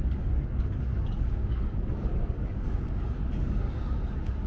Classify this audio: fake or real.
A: fake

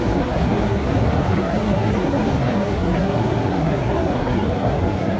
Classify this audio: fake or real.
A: fake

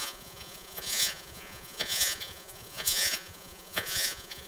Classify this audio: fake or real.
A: fake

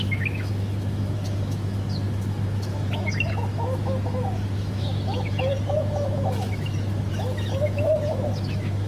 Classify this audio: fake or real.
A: fake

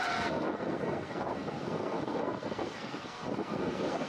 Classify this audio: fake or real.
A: fake